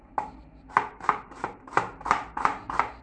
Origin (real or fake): fake